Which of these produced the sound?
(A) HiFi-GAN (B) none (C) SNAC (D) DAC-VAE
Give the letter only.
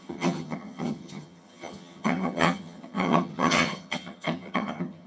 A